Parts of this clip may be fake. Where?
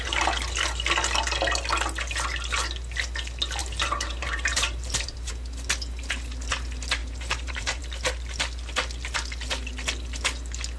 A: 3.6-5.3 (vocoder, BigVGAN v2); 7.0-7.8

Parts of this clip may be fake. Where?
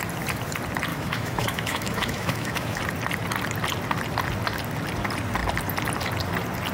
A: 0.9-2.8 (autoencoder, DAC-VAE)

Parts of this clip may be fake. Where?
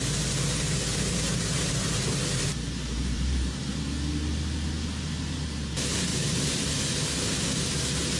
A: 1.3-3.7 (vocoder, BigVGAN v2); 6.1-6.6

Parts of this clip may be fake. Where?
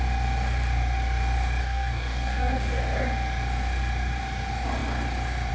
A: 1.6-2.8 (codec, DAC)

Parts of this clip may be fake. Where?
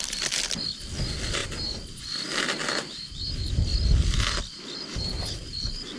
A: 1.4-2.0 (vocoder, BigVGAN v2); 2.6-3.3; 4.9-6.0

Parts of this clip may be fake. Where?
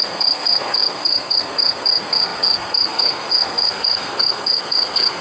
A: 0.0-5.2 (codec, SNAC)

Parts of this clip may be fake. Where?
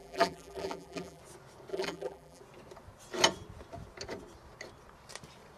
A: 0.0-1.2 (vocoder, BigVGAN v2); 1.7-2.4